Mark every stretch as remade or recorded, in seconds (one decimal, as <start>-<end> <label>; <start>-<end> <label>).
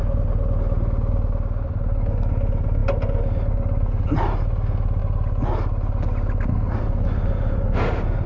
0.0-8.3 recorded